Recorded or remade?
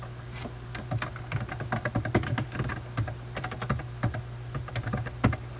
recorded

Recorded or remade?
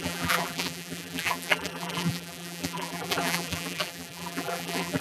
remade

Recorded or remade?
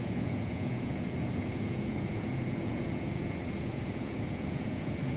remade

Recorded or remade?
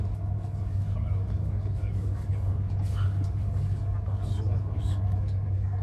remade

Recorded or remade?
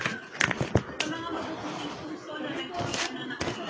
recorded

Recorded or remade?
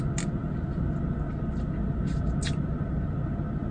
recorded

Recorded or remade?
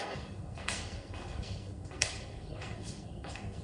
remade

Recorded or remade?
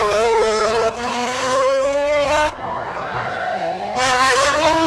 remade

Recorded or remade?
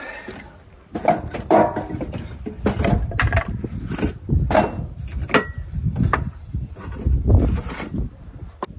recorded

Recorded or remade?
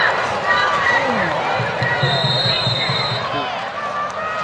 recorded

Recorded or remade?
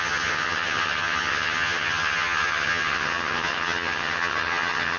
remade